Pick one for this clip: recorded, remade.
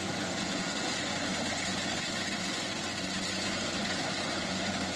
remade